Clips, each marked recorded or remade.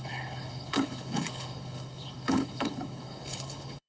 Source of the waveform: remade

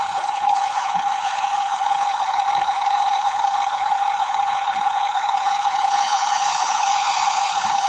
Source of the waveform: remade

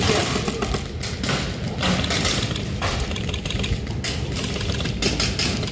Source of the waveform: recorded